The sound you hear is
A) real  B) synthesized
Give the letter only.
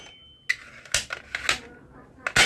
A